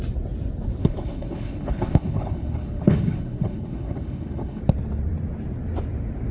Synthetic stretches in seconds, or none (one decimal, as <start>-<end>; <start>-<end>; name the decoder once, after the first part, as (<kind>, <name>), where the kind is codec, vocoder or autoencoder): 0.8-4.6 (codec, HILCodec)